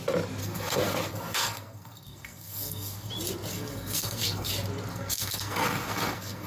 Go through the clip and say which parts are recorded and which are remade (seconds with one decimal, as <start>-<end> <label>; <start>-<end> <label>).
0.0-0.4 recorded; 0.4-3.1 remade; 3.1-3.5 recorded; 3.5-4.5 remade; 4.5-4.9 recorded; 4.9-6.5 remade